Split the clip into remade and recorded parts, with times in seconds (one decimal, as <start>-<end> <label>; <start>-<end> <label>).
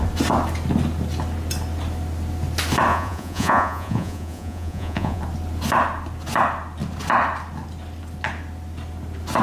0.0-2.9 recorded; 2.9-5.2 remade; 5.2-9.4 recorded